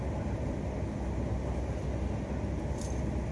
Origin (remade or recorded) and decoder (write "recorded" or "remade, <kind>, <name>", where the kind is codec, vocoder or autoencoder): recorded